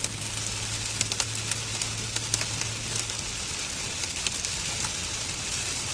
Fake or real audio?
real